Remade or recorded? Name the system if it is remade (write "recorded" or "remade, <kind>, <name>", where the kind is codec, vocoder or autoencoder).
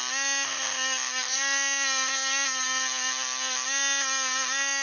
recorded